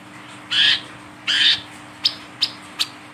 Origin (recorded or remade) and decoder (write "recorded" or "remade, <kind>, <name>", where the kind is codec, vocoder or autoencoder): recorded